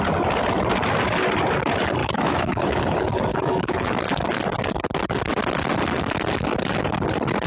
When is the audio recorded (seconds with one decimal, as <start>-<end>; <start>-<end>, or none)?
0.0-2.0; 2.8-3.3; 4.0-7.5